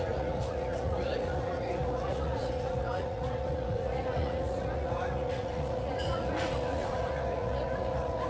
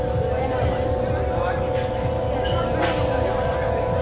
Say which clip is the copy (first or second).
first